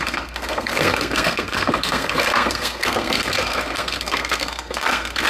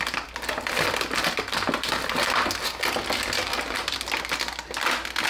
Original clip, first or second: second